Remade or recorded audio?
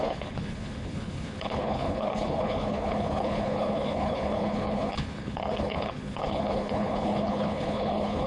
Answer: remade